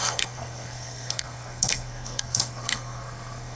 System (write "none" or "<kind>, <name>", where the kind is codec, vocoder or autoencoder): codec, SNAC